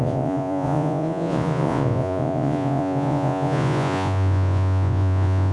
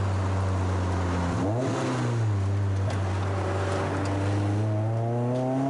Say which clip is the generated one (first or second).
first